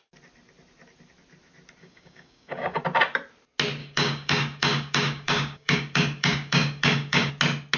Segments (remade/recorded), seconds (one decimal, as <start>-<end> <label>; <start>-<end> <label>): 0.0-1.8 recorded; 1.8-2.8 remade; 2.8-3.8 recorded; 3.8-7.3 remade; 7.3-7.8 recorded